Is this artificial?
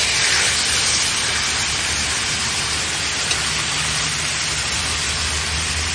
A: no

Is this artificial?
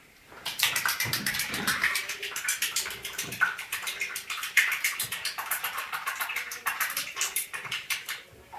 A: yes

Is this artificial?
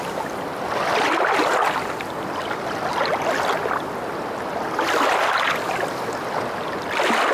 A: no